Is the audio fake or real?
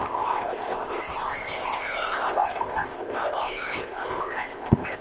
fake